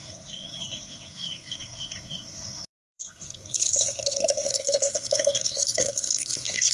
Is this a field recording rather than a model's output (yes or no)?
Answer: no